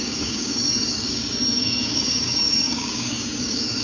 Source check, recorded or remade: remade